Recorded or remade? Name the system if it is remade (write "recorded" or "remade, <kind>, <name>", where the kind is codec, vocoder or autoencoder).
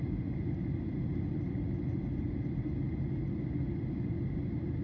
recorded